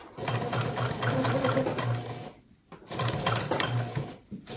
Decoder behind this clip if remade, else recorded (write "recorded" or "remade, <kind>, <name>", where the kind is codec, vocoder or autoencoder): recorded